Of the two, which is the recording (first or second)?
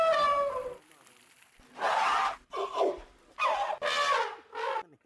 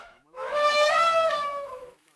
first